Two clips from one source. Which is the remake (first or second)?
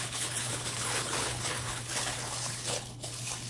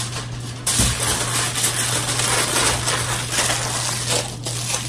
first